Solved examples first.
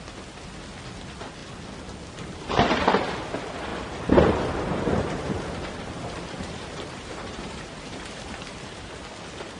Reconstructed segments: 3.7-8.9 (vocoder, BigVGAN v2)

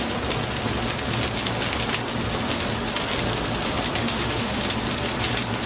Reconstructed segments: 4.0-4.6 (autoencoder, DAC-VAE)